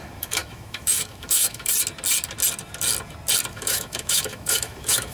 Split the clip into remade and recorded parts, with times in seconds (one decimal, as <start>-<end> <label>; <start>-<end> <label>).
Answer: 0.0-1.7 remade; 1.7-3.5 recorded; 3.5-5.1 remade